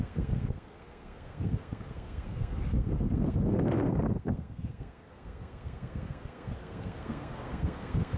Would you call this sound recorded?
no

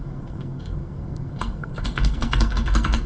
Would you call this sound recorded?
no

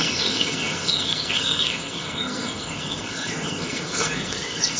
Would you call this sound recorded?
no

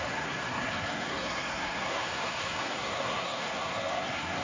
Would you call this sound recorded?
no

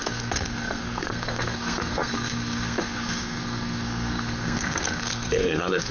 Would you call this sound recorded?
no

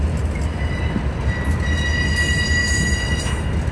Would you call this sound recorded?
yes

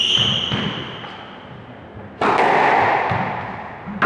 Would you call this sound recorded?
yes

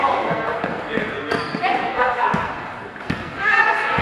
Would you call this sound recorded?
no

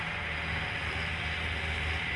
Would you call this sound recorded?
yes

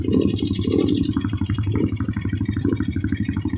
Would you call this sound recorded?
yes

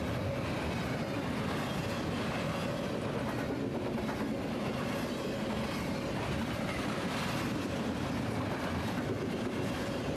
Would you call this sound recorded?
yes